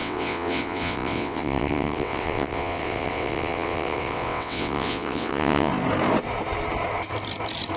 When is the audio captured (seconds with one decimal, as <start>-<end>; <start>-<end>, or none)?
5.7-7.8